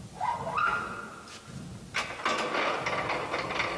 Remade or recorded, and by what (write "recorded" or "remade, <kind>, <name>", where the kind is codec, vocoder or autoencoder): recorded